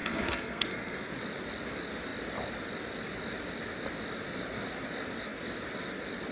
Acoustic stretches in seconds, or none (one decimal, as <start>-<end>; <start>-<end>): 1.1-6.3